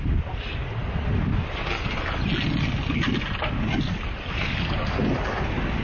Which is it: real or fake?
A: real